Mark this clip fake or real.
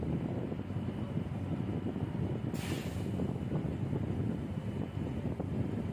real